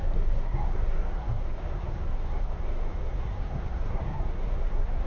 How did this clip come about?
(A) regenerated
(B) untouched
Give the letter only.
A